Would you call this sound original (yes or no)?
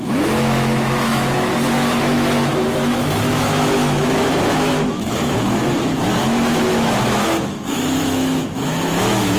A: no